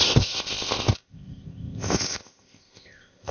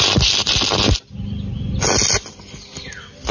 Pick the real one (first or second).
second